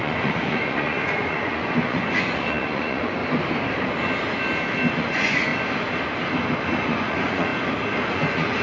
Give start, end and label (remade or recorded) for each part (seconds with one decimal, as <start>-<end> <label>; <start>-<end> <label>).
0.0-3.2 remade; 3.2-4.9 recorded; 4.9-5.5 remade; 5.5-6.6 recorded; 6.6-7.5 remade; 7.5-8.1 recorded; 8.1-8.6 remade